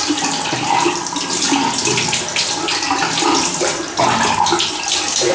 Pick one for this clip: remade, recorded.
recorded